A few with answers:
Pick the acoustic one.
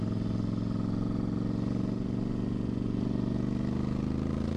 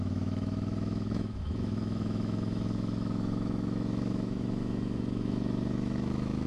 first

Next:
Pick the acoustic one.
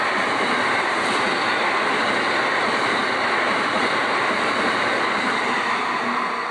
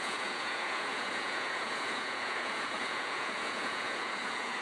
first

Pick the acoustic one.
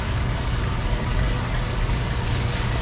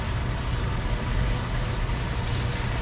second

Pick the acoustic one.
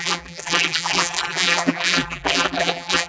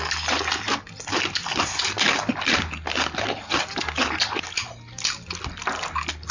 second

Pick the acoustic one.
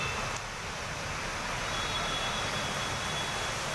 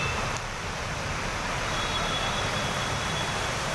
first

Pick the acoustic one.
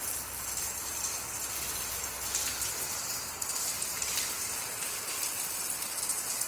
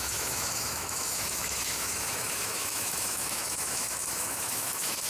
first